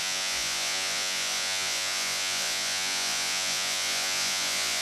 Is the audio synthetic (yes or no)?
yes